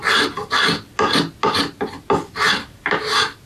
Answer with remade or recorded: recorded